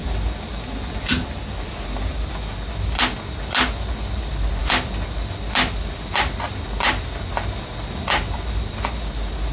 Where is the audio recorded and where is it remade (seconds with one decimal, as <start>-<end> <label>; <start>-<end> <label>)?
0.0-9.5 recorded